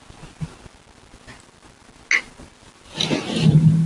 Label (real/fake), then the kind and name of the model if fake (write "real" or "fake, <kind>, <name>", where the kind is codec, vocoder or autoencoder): real